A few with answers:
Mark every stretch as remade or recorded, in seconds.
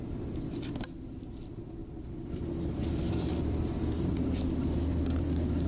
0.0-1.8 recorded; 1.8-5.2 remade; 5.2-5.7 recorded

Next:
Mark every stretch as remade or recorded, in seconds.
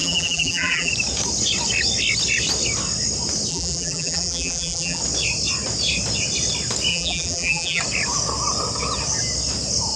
0.0-0.9 remade; 0.9-3.5 recorded; 3.5-5.0 remade; 5.0-6.9 recorded; 6.9-7.8 remade; 7.8-10.0 recorded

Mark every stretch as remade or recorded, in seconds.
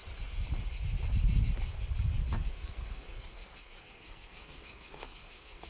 0.0-2.3 recorded; 2.3-5.7 remade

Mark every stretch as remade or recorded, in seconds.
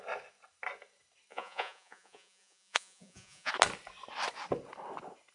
0.0-1.3 recorded; 1.3-3.5 remade; 3.5-5.3 recorded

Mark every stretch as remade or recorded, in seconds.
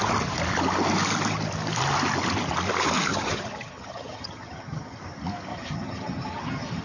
0.0-3.1 recorded; 3.1-5.0 remade; 5.0-5.5 recorded; 5.5-6.8 remade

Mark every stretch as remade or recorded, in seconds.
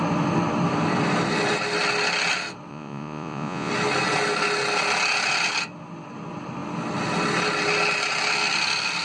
0.0-2.7 recorded; 2.7-3.7 remade; 3.7-9.0 recorded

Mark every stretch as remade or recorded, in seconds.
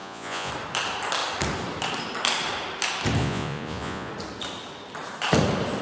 0.0-0.5 remade; 0.5-3.2 recorded; 3.2-4.1 remade; 4.1-5.8 recorded